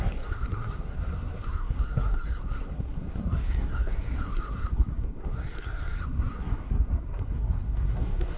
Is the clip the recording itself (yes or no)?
no